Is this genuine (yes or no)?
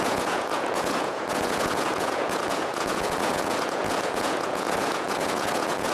no